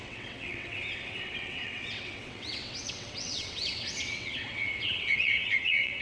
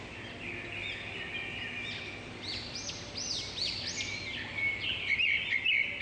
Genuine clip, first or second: second